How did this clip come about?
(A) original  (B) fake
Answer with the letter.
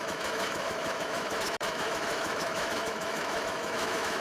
B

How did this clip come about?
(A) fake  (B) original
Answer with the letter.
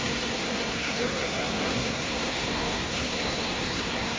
A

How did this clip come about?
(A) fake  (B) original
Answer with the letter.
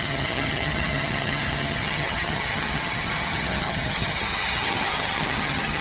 A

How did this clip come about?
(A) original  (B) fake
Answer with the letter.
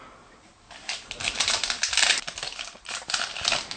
A